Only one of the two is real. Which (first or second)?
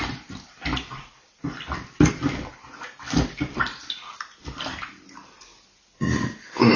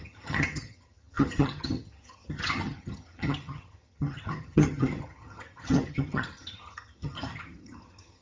first